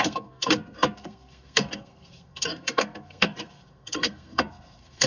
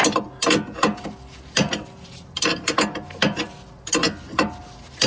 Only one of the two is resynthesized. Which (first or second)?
first